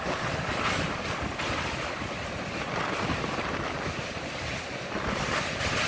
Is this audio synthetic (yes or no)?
no